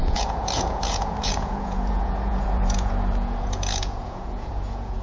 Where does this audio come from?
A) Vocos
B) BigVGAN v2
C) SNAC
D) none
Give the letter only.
A